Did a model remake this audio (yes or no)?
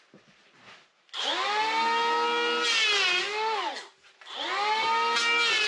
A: no